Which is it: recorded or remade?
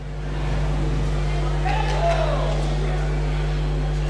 recorded